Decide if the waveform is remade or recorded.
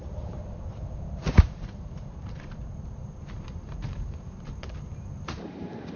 remade